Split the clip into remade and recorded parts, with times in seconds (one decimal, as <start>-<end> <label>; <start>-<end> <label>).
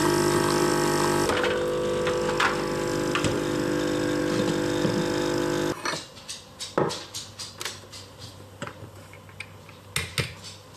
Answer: 0.0-10.8 recorded